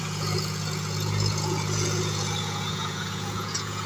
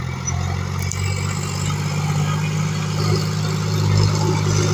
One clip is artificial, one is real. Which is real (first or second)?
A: second